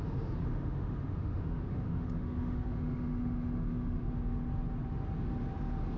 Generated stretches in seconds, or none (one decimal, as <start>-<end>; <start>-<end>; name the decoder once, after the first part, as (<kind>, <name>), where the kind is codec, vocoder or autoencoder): 0.5-4.1 (autoencoder, DAC-VAE)